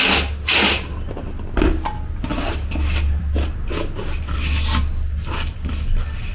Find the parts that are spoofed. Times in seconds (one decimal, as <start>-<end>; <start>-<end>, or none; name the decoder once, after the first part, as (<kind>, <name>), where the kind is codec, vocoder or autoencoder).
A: none